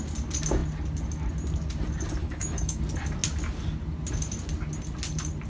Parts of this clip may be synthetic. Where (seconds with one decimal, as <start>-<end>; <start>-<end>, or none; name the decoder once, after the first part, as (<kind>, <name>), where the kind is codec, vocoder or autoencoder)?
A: 2.2-2.8 (autoencoder, DAC-VAE)